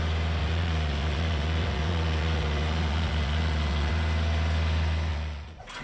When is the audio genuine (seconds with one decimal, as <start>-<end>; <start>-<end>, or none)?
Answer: 0.0-0.4; 3.9-5.1